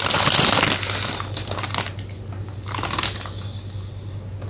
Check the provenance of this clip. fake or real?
real